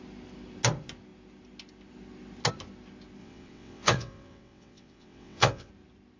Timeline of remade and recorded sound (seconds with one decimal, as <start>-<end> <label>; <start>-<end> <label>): 0.0-3.2 recorded; 3.2-5.7 remade; 5.7-6.2 recorded